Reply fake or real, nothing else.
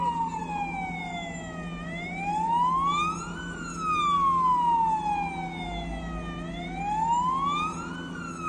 real